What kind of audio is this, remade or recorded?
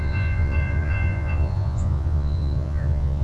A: remade